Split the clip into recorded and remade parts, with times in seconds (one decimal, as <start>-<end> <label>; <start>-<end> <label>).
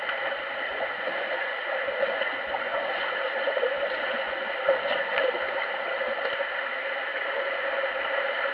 0.0-0.7 recorded; 0.7-5.2 remade; 5.2-7.1 recorded; 7.1-7.6 remade; 7.6-8.5 recorded